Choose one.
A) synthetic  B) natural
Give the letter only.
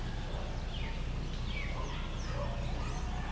B